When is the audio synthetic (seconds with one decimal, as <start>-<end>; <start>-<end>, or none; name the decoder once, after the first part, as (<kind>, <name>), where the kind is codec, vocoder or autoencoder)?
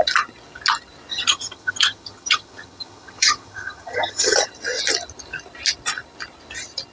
1.1-4.5 (vocoder, HiFi-GAN)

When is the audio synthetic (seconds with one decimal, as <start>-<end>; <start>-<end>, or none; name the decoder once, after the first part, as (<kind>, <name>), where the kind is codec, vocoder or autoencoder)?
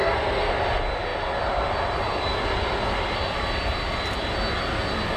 0.0-0.5 (codec, SNAC)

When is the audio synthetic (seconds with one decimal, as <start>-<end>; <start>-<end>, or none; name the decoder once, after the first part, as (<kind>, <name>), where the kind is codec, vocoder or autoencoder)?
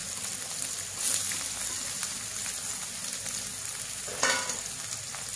none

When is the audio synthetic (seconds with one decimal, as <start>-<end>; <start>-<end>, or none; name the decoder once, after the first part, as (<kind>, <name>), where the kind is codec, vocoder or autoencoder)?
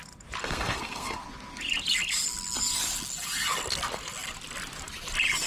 0.4-1.2 (codec, SNAC)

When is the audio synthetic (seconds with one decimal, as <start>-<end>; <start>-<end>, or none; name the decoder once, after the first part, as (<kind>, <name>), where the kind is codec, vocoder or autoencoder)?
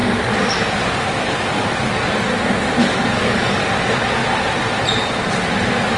0.0-0.6 (codec, DAC); 2.8-3.6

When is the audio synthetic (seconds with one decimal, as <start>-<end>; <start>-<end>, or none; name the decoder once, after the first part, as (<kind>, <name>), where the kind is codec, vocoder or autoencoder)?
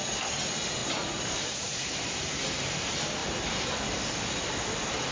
0.8-2.3 (vocoder, BigVGAN v2)